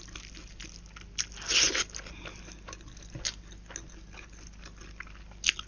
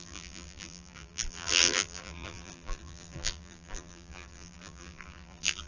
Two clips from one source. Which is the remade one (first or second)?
second